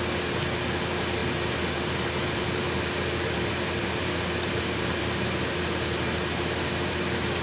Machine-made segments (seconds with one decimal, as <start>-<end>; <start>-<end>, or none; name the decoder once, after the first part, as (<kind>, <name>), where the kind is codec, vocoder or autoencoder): 1.2-5.4 (vocoder, BigVGAN v2)